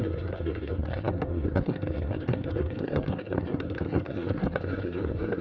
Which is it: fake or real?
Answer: fake